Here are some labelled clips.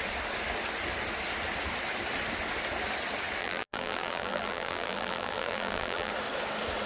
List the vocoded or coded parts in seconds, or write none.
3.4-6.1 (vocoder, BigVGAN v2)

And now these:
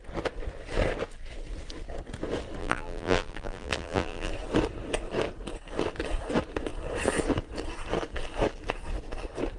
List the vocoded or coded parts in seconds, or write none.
2.6-4.3 (vocoder, BigVGAN v2)

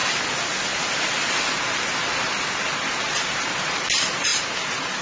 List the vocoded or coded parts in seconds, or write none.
3.0-5.0 (vocoder, BigVGAN v2)

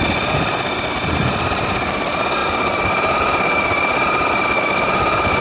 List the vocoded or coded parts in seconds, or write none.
2.4-5.4 (vocoder, BigVGAN v2)